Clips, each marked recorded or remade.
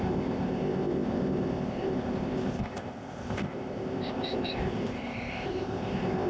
remade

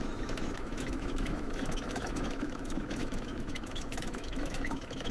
remade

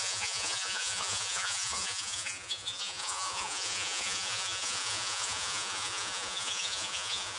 remade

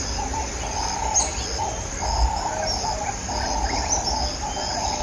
recorded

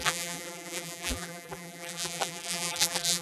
remade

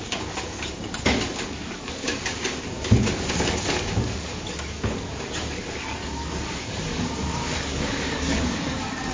remade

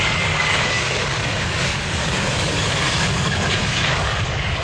remade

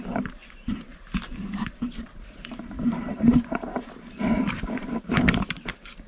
remade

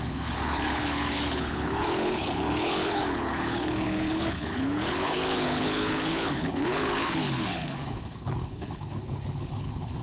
remade